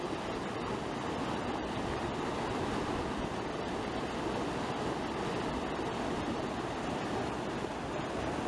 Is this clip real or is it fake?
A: real